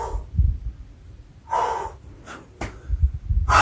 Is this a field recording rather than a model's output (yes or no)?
yes